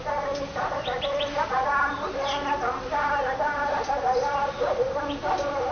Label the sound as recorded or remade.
recorded